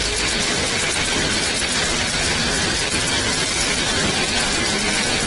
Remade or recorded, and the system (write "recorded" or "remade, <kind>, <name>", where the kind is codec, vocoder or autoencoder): recorded